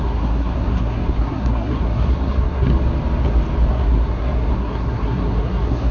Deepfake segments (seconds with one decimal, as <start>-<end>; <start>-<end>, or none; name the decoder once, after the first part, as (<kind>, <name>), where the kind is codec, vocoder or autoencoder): 0.0-2.7 (codec, SNAC); 3.7-5.9